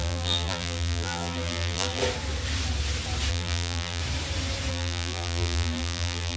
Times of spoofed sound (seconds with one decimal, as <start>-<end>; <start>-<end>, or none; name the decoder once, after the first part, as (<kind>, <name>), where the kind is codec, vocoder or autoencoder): 0.0-2.0 (vocoder, BigVGAN v2); 3.3-4.0; 4.7-6.4